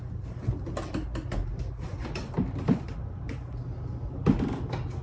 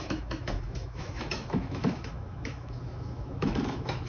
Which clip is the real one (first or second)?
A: first